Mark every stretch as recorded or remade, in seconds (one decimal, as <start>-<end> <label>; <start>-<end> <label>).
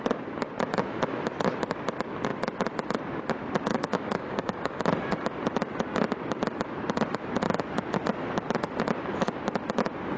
0.0-3.7 recorded; 3.7-4.8 remade; 4.8-10.2 recorded